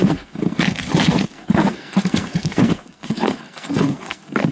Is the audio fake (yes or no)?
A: yes